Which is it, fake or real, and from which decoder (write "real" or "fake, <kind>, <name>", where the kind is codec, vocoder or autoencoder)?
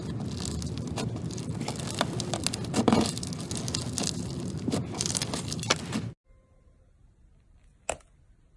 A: real